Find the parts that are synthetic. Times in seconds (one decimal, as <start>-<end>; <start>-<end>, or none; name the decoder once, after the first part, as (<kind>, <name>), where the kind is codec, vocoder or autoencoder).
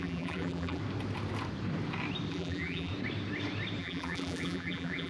0.0-0.8 (vocoder, BigVGAN v2); 2.3-2.9; 3.8-5.1